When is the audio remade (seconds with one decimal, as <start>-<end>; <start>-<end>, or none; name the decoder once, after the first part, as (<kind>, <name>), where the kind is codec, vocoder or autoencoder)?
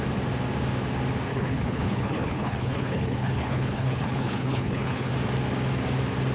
1.3-5.1 (codec, HILCodec)